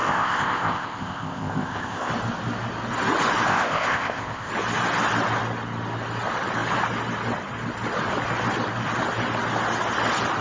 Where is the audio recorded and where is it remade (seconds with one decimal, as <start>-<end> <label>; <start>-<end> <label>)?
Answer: 0.0-2.1 remade; 2.1-3.5 recorded; 3.5-4.5 remade; 4.5-10.4 recorded